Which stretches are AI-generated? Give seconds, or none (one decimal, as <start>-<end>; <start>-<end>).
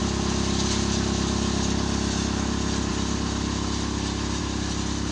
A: none